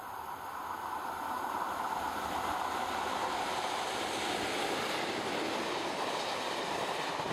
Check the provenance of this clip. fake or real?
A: fake